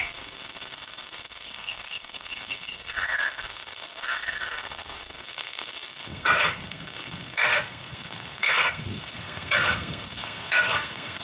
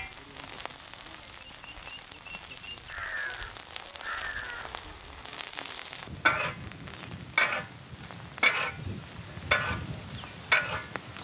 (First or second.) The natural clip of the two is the second